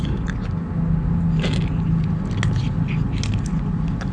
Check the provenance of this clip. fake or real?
real